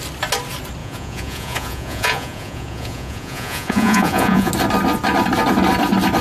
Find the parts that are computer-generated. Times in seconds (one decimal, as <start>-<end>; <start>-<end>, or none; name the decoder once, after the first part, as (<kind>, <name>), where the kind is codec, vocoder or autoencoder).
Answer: 0.8-4.5 (vocoder, Vocos)